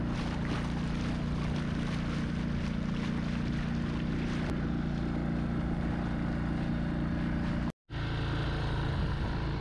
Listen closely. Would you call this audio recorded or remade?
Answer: recorded